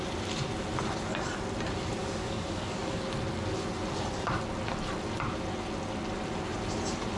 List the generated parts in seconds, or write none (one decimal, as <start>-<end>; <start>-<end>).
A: 2.0-3.0